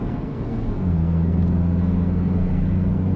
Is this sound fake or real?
fake